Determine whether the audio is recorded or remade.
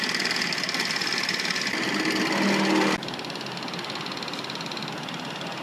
recorded